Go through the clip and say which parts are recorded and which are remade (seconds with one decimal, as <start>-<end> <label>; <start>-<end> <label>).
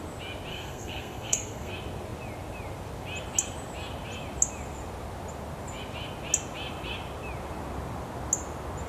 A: 0.0-0.5 recorded; 0.5-1.7 remade; 1.7-8.9 recorded